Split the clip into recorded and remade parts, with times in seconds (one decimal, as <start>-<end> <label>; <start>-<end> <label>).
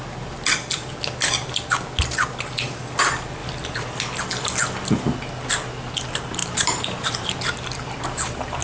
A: 0.0-3.4 recorded; 3.4-4.0 remade; 4.0-6.4 recorded; 6.4-7.3 remade; 7.3-8.6 recorded